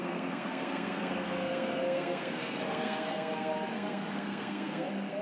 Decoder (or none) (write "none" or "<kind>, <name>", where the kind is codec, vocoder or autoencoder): codec, SNAC